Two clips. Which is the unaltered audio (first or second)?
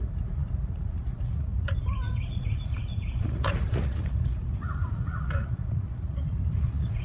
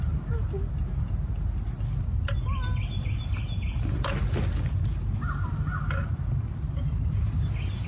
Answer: second